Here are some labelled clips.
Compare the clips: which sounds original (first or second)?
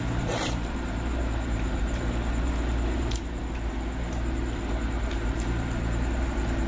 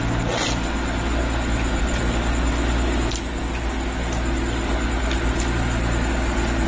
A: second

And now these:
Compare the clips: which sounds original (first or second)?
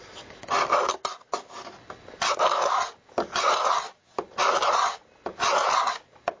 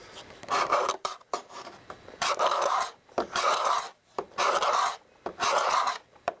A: first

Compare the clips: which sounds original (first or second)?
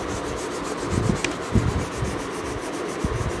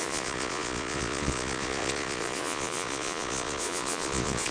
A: first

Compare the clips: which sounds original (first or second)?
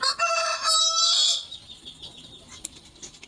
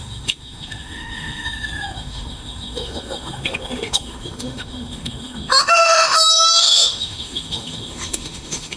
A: first